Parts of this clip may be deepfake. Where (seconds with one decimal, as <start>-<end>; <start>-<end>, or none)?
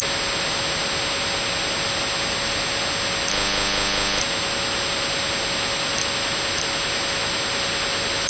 3.3-4.2